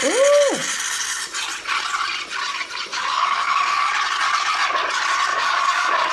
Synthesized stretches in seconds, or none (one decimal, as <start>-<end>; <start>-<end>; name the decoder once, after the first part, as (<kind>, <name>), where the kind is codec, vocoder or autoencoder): 2.9-3.9 (codec, DAC); 5.3-6.1